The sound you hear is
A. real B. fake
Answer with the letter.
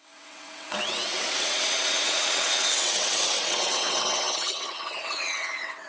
B